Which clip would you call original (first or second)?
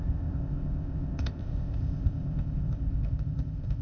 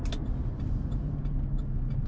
second